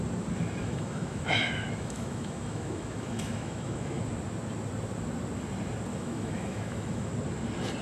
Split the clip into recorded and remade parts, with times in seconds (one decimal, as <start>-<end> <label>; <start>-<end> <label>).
0.0-0.6 recorded; 0.6-4.0 remade; 4.0-5.9 recorded; 5.9-7.1 remade; 7.1-7.8 recorded